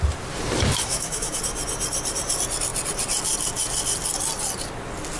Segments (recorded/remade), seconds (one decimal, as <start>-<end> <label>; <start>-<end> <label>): 0.0-0.8 recorded; 0.8-1.4 remade; 1.4-5.2 recorded